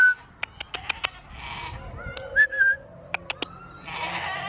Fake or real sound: real